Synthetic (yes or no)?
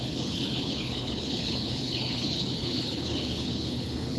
yes